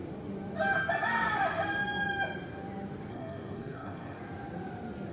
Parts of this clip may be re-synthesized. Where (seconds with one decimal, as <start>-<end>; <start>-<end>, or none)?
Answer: 3.1-4.2